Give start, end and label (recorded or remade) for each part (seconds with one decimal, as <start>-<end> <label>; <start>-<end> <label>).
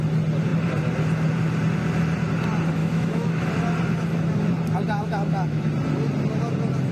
0.0-2.8 recorded; 2.8-3.5 remade; 3.5-5.0 recorded; 5.0-5.7 remade; 5.7-6.9 recorded